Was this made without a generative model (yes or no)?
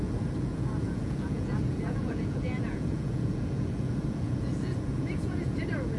no